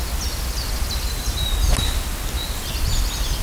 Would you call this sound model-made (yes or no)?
no